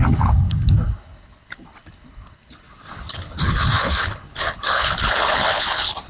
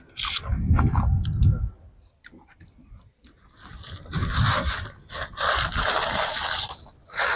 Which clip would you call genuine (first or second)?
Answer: second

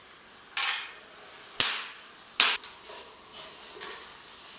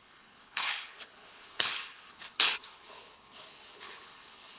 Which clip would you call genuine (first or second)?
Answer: first